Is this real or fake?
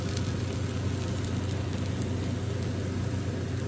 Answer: real